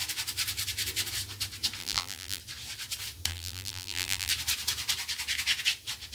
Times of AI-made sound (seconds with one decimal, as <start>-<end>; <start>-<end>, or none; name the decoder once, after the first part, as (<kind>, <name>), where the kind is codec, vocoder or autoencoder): 1.8-2.4 (vocoder, BigVGAN v2); 3.3-4.3